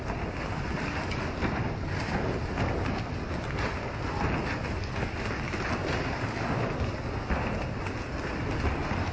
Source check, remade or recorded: recorded